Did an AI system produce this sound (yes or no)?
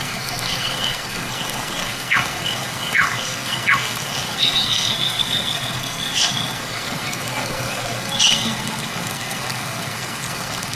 yes